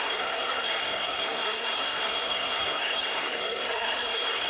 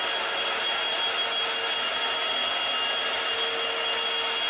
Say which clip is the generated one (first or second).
first